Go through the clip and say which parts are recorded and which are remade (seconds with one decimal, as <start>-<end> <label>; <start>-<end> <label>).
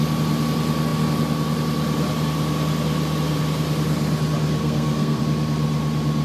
0.0-4.6 recorded; 4.6-5.2 remade; 5.2-6.2 recorded